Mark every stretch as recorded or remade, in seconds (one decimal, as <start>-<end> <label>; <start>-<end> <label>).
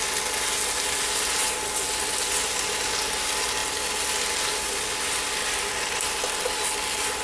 0.0-7.2 recorded